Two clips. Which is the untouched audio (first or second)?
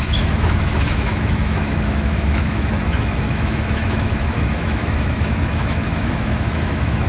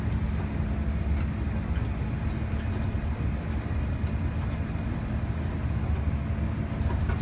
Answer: second